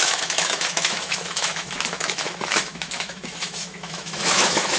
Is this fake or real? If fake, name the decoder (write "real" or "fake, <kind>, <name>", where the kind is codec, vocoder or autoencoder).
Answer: fake, autoencoder, DAC-VAE